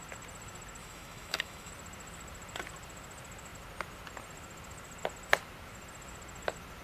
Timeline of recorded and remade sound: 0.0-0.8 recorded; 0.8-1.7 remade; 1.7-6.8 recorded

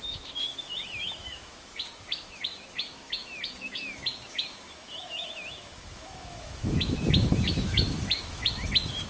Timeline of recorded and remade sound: 0.0-9.1 remade

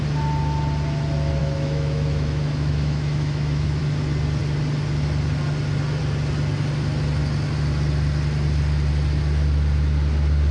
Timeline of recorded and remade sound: 0.0-1.4 recorded; 1.4-3.8 remade; 3.8-10.5 recorded